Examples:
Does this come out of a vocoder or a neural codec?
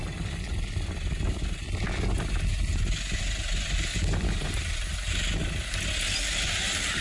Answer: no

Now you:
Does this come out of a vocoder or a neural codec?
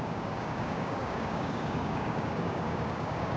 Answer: yes